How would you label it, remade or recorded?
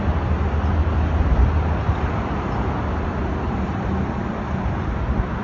recorded